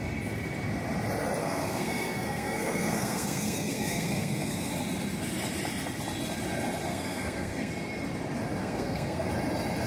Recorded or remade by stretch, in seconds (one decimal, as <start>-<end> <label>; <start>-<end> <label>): 0.0-1.4 recorded; 1.4-4.7 remade; 4.7-6.9 recorded; 6.9-7.7 remade; 7.7-8.6 recorded; 8.6-9.3 remade; 9.3-9.9 recorded